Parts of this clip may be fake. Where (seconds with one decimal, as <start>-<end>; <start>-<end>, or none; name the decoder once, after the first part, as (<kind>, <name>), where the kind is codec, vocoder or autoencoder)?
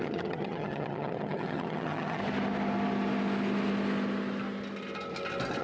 0.0-2.2 (vocoder, HiFi-GAN)